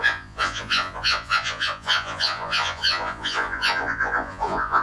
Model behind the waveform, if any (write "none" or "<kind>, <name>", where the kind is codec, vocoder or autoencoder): vocoder, Vocos